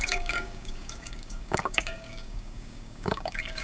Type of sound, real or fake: fake